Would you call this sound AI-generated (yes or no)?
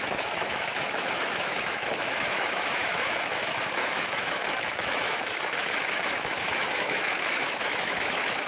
yes